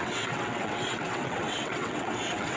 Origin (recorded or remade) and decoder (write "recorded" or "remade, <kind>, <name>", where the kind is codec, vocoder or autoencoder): remade, vocoder, WaveNeXt